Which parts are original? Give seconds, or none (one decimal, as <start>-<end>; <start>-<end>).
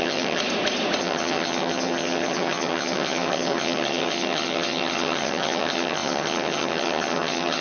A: 0.4-1.0